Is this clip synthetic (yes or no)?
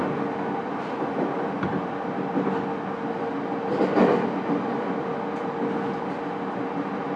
no